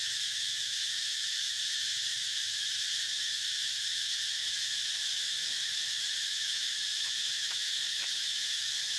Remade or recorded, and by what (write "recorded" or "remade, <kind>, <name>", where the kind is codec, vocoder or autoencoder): remade, autoencoder, DAC-VAE